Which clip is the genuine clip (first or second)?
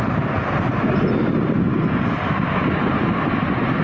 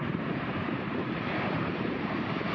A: first